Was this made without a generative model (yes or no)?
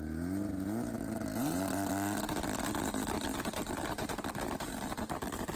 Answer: yes